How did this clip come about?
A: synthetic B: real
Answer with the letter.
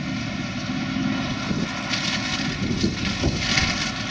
B